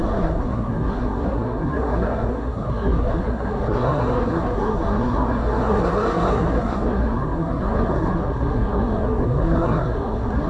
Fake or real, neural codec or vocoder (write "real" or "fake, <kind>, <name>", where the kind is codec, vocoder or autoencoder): fake, codec, SNAC